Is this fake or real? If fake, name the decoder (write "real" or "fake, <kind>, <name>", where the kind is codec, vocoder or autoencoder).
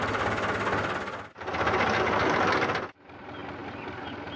real